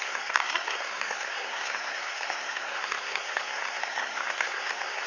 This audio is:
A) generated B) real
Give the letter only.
A